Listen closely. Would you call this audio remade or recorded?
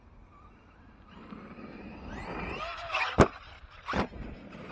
recorded